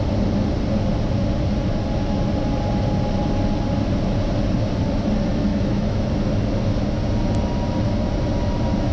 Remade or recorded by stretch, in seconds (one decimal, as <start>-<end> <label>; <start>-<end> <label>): 0.0-5.5 recorded; 5.5-6.1 remade; 6.1-8.9 recorded

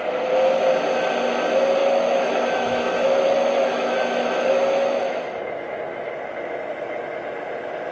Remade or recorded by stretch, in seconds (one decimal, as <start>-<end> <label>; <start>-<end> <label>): 0.0-1.8 recorded; 1.8-6.1 remade; 6.1-7.9 recorded

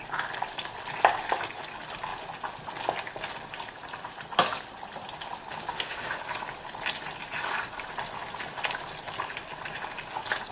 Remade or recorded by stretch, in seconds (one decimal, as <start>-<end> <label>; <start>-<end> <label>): 0.0-5.7 recorded; 5.7-6.2 remade; 6.2-10.5 recorded

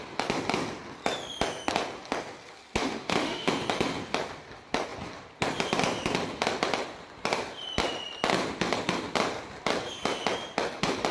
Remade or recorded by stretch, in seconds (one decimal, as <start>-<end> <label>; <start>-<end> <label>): 0.0-2.8 recorded; 2.8-3.5 remade; 3.5-11.1 recorded

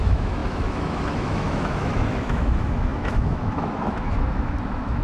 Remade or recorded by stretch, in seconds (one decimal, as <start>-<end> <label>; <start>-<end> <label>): 0.0-5.0 remade